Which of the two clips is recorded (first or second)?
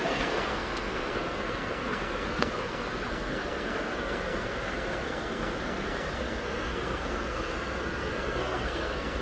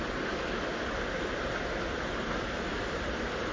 second